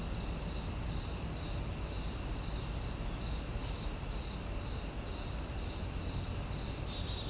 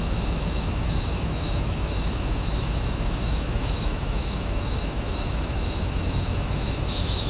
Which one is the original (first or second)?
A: first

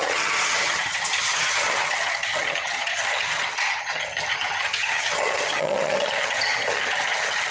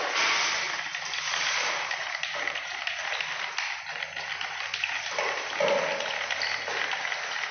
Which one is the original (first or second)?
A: second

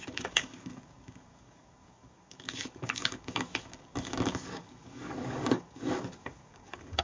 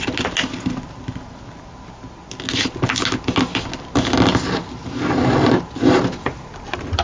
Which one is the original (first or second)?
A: second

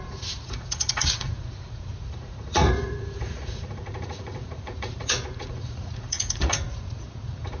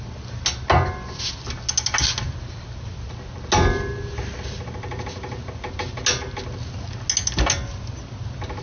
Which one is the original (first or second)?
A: second